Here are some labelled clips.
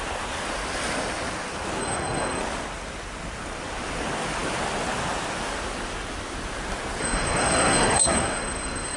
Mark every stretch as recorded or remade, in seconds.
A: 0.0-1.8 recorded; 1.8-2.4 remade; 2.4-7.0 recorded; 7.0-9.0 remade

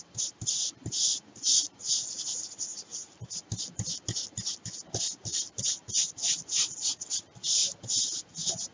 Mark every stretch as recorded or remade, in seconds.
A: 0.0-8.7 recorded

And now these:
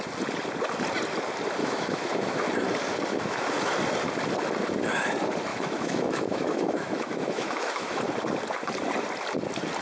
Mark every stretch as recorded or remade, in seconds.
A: 0.0-1.6 recorded; 1.6-2.5 remade; 2.5-3.1 recorded; 3.1-3.6 remade; 3.6-5.5 recorded; 5.5-8.0 remade; 8.0-9.8 recorded

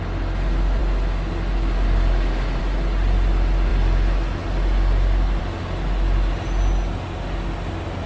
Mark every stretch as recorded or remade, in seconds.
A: 0.0-8.1 recorded